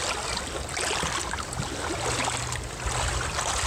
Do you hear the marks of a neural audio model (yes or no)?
no